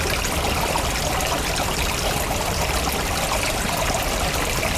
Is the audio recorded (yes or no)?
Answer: yes